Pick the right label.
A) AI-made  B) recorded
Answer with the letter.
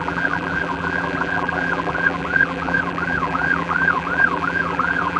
A